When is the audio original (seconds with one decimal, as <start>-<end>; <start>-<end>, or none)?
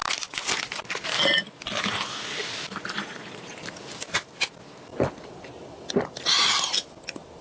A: 0.0-7.4